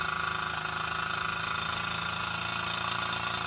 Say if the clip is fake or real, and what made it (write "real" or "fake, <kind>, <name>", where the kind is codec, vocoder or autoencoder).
real